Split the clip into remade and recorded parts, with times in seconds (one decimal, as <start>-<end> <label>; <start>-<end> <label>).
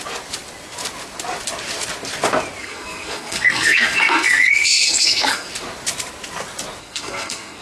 0.0-2.6 recorded; 2.6-5.5 remade; 5.5-6.8 recorded; 6.8-7.6 remade